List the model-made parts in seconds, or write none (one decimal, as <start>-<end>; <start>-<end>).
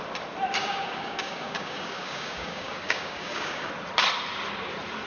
0.6-3.7